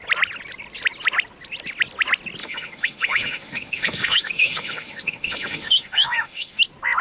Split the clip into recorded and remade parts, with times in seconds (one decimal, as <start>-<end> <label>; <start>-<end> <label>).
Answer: 0.0-2.4 recorded; 2.4-6.6 remade; 6.6-7.0 recorded